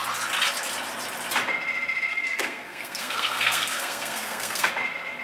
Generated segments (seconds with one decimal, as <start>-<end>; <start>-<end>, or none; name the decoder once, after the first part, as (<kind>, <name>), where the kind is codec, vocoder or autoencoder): 2.1-4.7 (codec, SNAC)